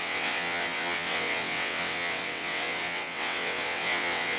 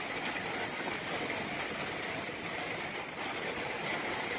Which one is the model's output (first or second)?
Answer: first